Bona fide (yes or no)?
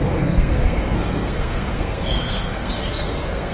no